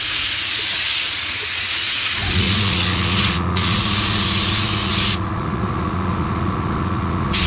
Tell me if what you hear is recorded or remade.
remade